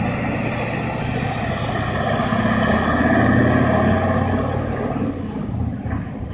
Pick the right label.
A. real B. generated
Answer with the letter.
A